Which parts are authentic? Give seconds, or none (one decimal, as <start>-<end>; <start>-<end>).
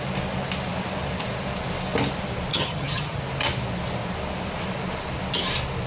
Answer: 0.0-2.5; 3.2-5.9